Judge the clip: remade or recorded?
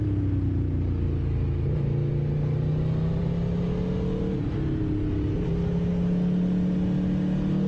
recorded